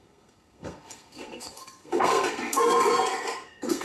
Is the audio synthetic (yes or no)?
yes